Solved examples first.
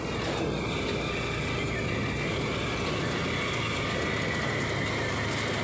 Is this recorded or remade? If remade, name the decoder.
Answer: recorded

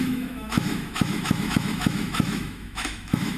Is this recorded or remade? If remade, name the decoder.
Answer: remade, autoencoder, DAC-VAE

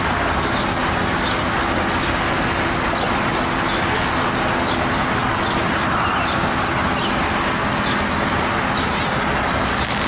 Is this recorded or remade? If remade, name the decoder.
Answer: recorded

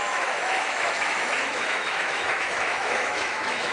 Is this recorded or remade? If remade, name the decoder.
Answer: remade, autoencoder, DAC-VAE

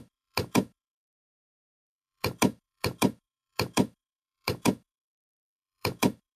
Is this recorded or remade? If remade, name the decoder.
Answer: remade, autoencoder, DAC-VAE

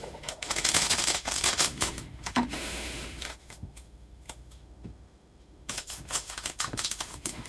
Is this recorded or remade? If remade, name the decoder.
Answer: remade, autoencoder, DAC-VAE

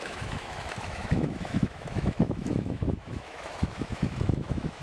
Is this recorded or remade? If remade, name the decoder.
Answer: remade, autoencoder, DAC-VAE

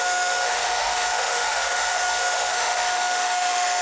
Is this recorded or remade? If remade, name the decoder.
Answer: remade, autoencoder, DAC-VAE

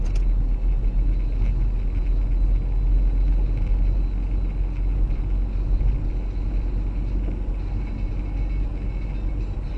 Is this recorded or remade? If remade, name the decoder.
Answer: recorded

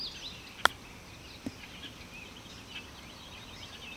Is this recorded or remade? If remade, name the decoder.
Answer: recorded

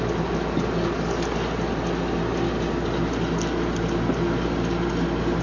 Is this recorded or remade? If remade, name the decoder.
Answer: recorded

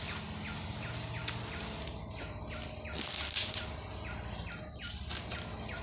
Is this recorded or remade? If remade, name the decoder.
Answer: recorded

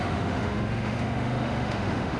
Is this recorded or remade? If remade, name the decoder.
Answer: remade, autoencoder, DAC-VAE